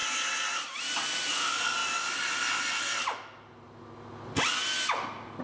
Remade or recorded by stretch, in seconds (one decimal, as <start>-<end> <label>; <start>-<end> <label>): 0.0-5.4 recorded